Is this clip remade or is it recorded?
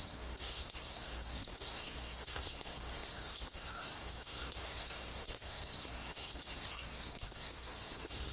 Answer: remade